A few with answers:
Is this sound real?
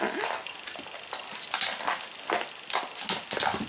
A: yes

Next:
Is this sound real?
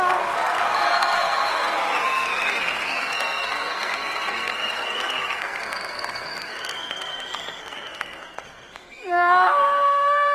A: no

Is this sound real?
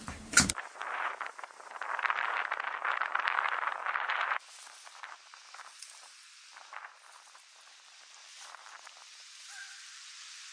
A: no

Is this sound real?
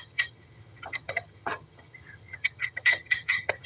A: no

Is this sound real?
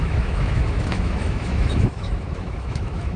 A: no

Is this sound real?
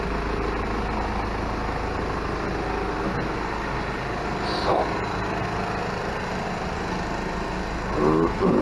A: yes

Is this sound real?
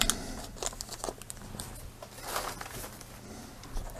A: yes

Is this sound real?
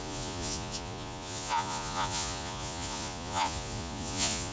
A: no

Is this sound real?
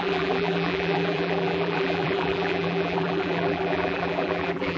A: no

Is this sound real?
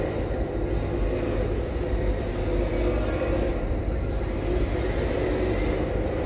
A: yes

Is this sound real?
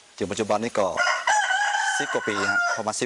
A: no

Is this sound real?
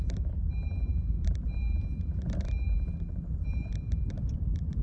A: no